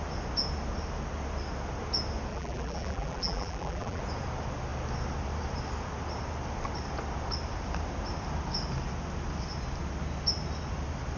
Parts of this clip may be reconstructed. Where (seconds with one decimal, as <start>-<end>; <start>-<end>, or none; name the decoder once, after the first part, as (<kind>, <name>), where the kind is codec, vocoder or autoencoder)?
2.3-4.0 (vocoder, BigVGAN v2)